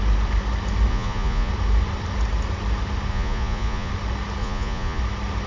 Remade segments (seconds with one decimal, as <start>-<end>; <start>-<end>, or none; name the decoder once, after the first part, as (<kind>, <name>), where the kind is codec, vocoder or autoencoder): 0.9-1.5 (vocoder, Vocos); 3.1-3.9; 4.4-5.0